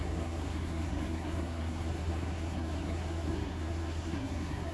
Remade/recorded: remade